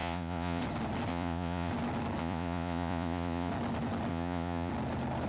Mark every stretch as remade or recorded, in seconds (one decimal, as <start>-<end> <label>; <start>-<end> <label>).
0.0-0.6 remade; 0.6-1.1 recorded; 1.1-1.7 remade; 1.7-2.2 recorded; 2.2-3.5 remade; 3.5-4.1 recorded; 4.1-4.7 remade; 4.7-5.3 recorded